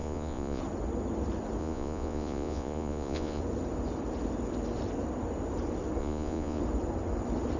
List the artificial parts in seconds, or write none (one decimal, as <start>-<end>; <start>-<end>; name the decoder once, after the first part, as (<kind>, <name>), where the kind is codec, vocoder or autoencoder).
0.0-0.6 (vocoder, Vocos); 1.6-3.4; 6.0-6.6